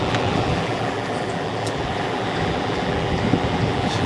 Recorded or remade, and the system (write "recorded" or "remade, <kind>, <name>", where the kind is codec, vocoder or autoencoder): remade, vocoder, BigVGAN v2